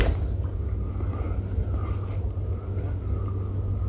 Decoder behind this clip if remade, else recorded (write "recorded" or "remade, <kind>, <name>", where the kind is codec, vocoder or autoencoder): recorded